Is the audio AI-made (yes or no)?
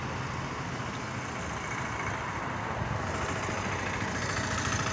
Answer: no